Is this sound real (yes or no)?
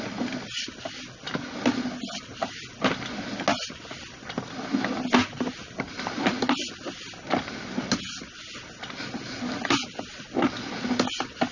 yes